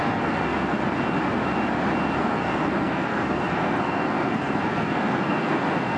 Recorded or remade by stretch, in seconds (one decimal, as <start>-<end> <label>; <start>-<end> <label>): 0.0-0.8 remade; 0.8-2.2 recorded; 2.2-6.0 remade